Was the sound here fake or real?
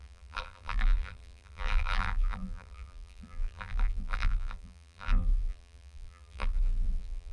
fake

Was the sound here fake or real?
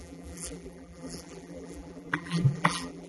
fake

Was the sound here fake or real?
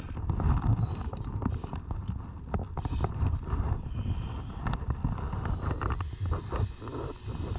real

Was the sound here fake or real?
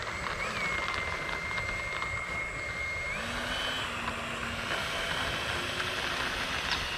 real